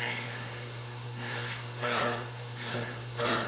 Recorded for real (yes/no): no